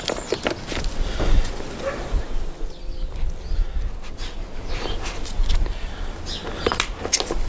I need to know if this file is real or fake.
real